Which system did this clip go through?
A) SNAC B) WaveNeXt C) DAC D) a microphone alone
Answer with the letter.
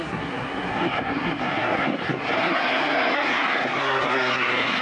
A